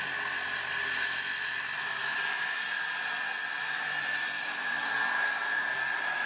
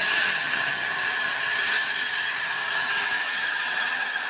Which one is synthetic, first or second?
second